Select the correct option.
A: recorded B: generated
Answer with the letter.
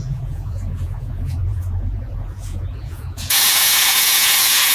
B